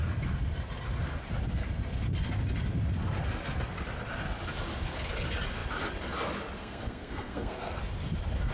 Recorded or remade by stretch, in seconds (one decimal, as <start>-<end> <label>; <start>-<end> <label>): 0.0-6.6 recorded; 6.6-7.8 remade; 7.8-8.5 recorded